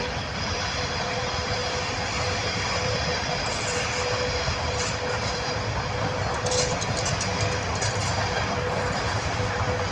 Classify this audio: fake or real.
fake